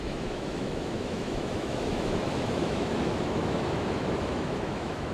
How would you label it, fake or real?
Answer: fake